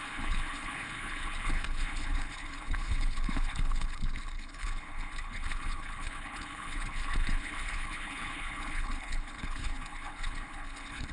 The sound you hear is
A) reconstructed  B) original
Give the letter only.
A